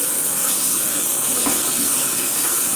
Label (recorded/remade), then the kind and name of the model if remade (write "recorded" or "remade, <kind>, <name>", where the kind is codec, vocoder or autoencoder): remade, codec, SNAC